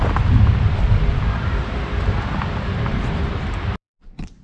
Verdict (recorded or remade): remade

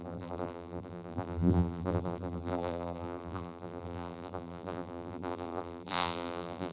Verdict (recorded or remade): remade